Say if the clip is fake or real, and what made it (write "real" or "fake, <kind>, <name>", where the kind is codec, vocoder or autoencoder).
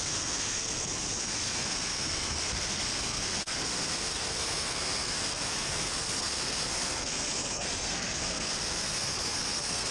fake, codec, SNAC